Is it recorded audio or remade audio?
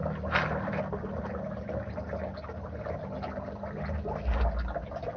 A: recorded